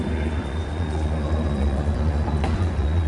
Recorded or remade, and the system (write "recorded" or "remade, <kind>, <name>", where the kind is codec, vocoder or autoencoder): remade, vocoder, Vocos